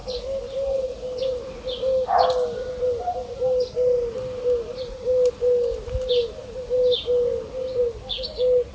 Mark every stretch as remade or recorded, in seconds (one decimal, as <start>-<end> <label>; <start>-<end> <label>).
0.0-8.7 recorded